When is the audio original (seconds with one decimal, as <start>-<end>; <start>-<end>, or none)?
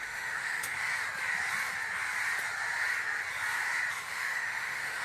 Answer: 0.9-3.9